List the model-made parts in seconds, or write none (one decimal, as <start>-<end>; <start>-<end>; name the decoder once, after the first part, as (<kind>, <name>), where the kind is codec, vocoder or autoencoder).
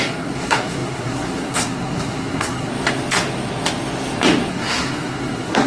0.0-2.7 (codec, SNAC); 4.5-5.7